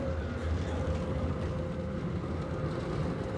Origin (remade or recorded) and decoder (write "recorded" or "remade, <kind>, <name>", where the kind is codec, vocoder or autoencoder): recorded